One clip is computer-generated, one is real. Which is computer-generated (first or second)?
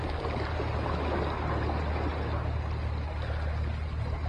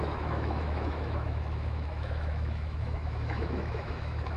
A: second